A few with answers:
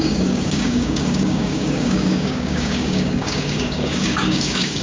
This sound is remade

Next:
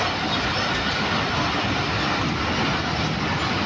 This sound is recorded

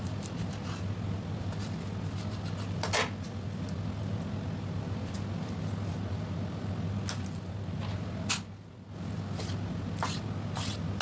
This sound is recorded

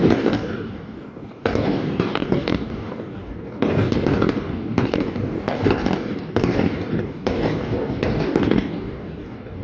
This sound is remade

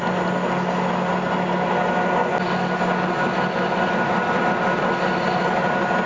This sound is recorded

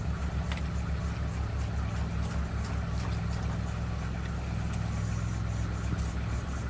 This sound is recorded